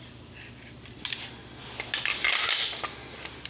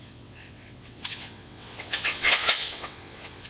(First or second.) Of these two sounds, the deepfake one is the second